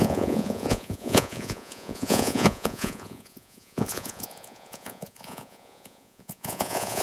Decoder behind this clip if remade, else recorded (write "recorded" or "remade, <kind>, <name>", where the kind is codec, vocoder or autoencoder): remade, vocoder, Vocos